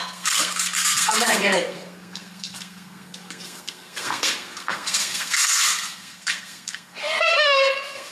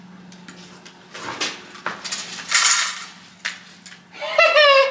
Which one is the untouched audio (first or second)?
second